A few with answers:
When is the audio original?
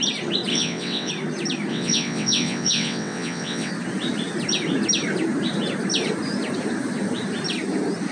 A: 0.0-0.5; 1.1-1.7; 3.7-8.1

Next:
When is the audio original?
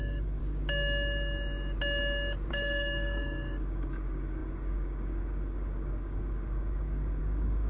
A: 0.4-2.5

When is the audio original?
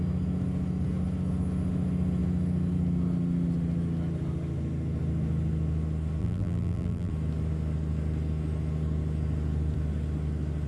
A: 0.0-6.2; 7.1-10.7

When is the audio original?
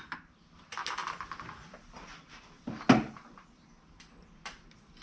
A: 0.0-5.0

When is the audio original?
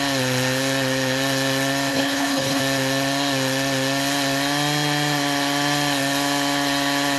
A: 0.0-1.9; 2.6-7.2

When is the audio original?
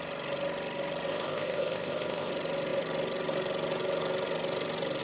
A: 0.0-1.1; 2.3-5.0